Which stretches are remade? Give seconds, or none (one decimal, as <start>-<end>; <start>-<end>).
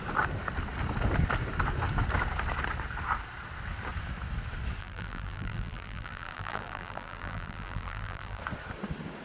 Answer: 4.8-8.4